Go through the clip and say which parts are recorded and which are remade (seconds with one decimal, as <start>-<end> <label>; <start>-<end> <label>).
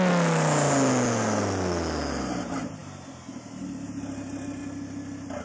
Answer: 0.0-5.4 recorded